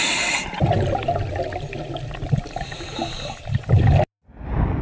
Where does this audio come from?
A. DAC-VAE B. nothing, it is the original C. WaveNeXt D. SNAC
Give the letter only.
B